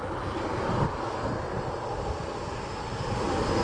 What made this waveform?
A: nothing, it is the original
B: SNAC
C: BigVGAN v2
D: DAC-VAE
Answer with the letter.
A